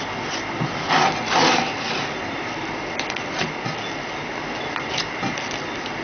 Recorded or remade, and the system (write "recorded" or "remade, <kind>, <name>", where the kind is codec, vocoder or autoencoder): recorded